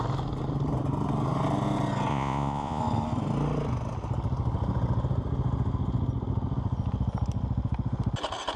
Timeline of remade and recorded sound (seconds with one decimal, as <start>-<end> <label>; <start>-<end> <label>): 0.0-2.1 recorded; 2.1-2.8 remade; 2.8-8.6 recorded